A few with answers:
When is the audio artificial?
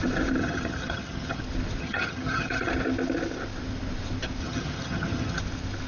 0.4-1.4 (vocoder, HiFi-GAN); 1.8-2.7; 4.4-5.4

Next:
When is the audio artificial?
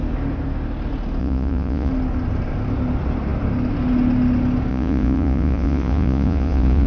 1.2-1.9 (vocoder, Vocos); 4.7-6.9